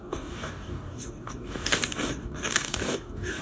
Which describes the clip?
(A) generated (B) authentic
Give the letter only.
A